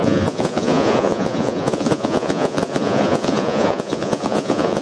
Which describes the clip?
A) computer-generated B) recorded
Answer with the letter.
A